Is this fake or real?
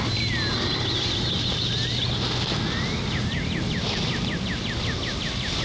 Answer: real